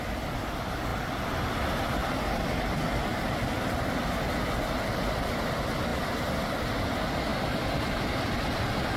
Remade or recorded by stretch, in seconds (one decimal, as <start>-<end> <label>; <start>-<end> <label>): 0.0-9.0 recorded